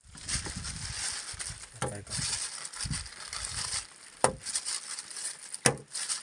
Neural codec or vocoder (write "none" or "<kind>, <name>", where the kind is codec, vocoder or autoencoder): none